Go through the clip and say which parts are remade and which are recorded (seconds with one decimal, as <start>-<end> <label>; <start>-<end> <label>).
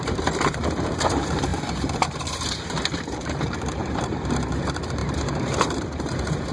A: 0.0-6.5 remade